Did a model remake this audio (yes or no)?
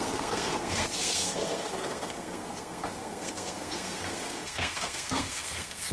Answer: yes